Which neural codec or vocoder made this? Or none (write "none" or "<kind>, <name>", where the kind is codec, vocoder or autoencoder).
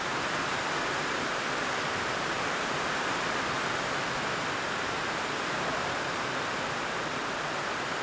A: vocoder, BigVGAN v2